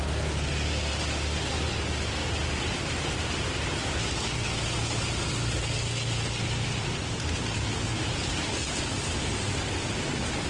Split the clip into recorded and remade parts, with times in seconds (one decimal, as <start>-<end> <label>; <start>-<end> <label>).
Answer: 0.0-2.2 recorded; 2.2-2.9 remade; 2.9-10.5 recorded

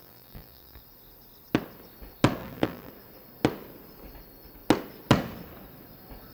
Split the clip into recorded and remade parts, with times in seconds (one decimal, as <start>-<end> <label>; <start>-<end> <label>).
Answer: 0.0-0.8 remade; 0.8-2.4 recorded; 2.4-2.9 remade; 2.9-6.3 recorded